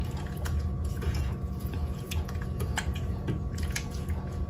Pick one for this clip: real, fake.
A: fake